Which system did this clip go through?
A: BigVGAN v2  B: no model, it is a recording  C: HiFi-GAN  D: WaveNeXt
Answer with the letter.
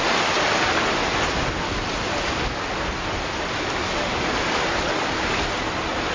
B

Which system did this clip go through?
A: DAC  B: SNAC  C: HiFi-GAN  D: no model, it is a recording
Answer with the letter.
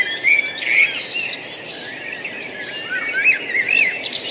D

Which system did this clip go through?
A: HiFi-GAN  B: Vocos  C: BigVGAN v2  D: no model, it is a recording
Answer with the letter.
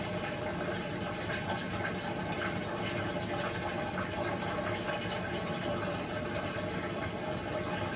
D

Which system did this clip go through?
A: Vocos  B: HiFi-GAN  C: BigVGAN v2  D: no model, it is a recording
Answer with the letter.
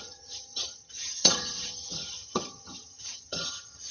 B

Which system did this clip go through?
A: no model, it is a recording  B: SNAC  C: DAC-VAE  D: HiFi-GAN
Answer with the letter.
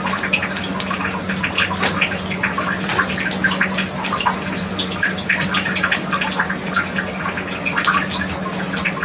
A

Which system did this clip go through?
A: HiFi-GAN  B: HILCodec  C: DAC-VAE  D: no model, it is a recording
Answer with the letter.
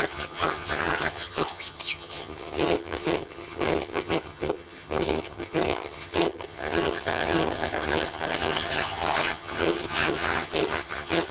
A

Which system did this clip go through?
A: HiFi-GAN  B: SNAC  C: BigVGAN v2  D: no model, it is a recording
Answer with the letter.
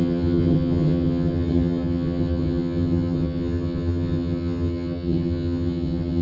A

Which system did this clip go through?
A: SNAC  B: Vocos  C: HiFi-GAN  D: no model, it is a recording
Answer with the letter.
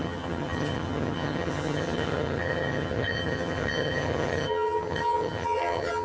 C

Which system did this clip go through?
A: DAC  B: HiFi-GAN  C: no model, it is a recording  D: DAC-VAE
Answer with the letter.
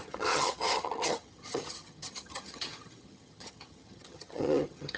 B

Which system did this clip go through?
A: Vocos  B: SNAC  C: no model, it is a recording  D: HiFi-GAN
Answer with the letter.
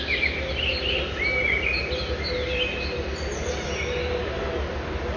C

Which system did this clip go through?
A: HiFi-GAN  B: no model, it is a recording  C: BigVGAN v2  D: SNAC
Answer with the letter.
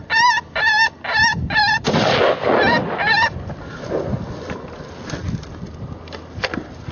B